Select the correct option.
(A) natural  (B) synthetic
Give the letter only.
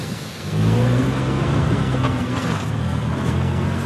B